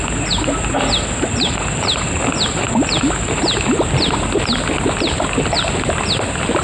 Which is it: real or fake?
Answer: real